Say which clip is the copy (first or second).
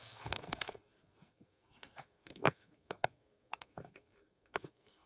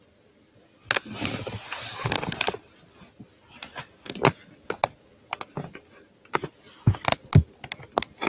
first